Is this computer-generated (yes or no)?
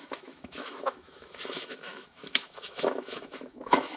yes